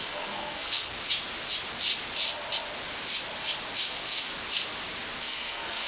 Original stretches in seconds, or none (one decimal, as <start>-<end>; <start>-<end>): 0.9-3.9; 4.3-5.2